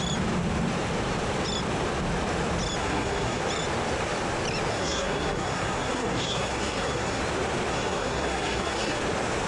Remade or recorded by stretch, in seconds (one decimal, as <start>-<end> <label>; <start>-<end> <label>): 0.0-2.8 recorded; 2.8-3.4 remade; 3.4-4.7 recorded; 4.7-7.2 remade; 7.2-7.7 recorded; 7.7-9.0 remade; 9.0-9.5 recorded